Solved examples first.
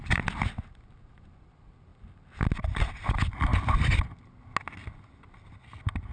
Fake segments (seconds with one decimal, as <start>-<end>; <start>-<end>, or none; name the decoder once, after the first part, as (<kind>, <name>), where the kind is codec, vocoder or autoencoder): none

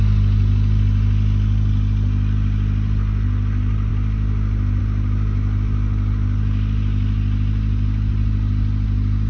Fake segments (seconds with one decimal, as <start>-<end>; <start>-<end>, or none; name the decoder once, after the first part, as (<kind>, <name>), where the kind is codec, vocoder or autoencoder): none

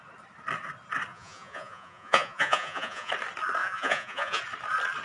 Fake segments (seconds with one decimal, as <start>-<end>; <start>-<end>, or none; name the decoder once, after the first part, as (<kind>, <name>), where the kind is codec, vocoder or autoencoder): 1.1-3.1 (vocoder, Vocos); 3.6-4.4

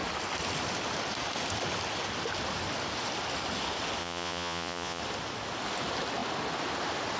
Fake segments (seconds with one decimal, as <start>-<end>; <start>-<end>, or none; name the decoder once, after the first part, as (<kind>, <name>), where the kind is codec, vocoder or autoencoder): 4.0-5.0 (vocoder, Vocos)

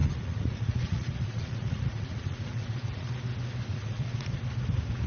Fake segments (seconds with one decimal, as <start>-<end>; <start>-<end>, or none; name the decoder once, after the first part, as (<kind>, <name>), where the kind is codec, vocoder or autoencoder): 0.0-3.1 (vocoder, Vocos); 3.7-4.4